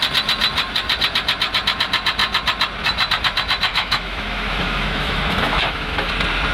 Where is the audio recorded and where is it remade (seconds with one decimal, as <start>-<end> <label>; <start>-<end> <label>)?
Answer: 0.0-3.7 recorded; 3.7-6.1 remade; 6.1-6.5 recorded